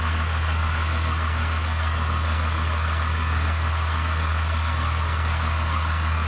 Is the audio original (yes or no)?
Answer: no